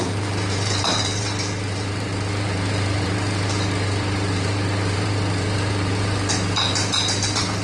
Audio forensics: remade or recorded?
remade